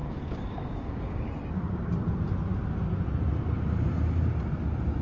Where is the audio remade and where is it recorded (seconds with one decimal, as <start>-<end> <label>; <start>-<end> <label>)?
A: 0.0-1.3 remade; 1.3-5.0 recorded